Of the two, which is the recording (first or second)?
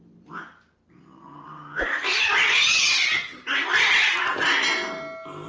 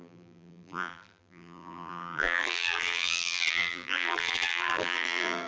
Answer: first